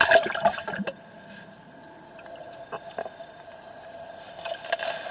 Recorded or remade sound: recorded